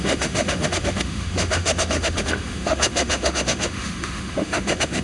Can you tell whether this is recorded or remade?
remade